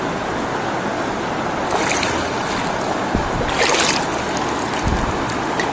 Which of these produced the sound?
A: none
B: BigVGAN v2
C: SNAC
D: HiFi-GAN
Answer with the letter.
A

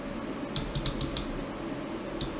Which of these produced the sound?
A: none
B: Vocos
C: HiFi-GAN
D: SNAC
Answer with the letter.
A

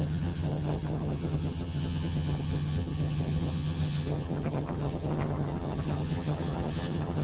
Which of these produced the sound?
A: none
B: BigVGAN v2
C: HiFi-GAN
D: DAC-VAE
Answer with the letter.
C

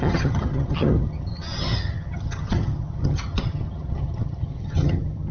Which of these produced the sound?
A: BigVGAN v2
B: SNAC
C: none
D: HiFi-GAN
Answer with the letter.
D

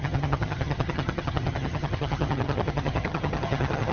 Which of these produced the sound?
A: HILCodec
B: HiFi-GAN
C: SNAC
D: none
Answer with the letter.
B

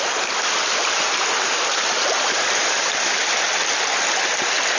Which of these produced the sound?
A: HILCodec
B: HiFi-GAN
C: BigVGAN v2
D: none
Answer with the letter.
D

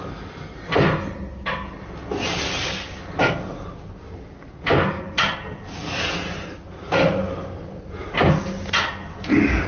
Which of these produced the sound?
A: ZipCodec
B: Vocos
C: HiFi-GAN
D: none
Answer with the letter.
D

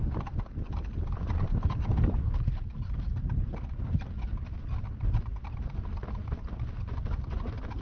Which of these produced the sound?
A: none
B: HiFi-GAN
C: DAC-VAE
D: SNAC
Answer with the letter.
A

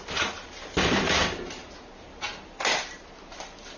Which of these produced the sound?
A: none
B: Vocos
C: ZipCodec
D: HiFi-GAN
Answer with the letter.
A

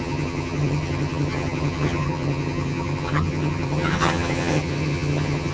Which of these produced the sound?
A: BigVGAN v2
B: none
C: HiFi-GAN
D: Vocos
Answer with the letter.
C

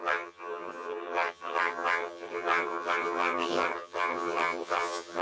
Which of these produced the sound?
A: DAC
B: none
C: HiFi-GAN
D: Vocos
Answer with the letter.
C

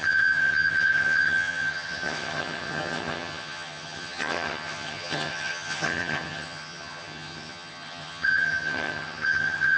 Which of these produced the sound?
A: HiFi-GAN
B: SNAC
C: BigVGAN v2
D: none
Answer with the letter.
A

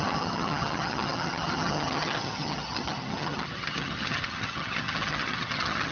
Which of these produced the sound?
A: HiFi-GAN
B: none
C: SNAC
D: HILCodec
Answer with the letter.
A